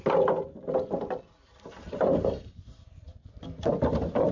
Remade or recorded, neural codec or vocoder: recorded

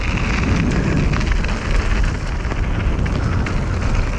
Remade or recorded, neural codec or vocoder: recorded